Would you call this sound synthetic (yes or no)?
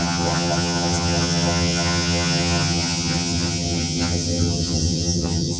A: yes